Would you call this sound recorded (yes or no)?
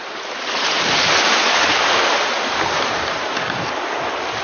yes